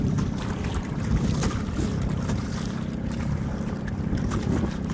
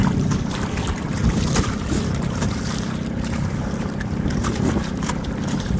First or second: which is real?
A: first